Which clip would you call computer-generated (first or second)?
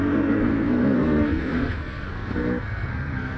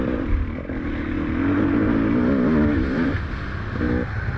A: first